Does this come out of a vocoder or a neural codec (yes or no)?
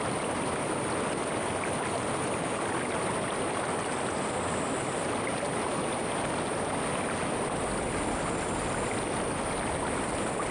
no